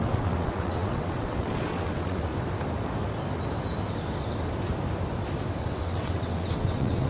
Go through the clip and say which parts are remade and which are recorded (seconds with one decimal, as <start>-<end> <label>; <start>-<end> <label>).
0.0-2.3 remade; 2.3-5.6 recorded; 5.6-7.1 remade